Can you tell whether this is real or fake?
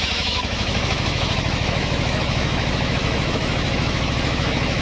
fake